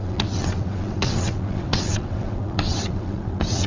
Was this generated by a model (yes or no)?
yes